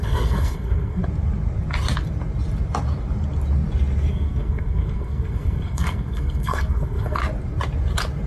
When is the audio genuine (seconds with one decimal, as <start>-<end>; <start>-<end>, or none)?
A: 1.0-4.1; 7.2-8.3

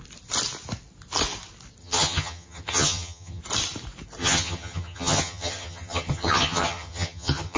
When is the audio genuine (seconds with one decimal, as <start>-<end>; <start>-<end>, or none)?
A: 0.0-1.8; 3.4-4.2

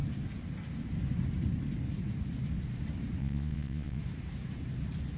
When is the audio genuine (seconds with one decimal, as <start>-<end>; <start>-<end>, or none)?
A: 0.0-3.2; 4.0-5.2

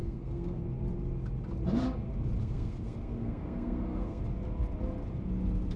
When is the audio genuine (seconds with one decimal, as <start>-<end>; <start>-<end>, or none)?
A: 0.6-2.4; 4.2-5.8